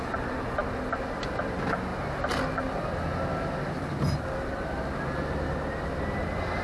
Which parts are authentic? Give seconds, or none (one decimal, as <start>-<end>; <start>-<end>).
0.0-6.6